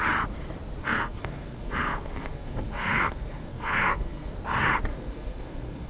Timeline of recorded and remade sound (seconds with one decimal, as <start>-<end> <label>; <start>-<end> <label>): 0.0-0.8 recorded; 0.8-4.3 remade; 4.3-4.9 recorded; 4.9-5.9 remade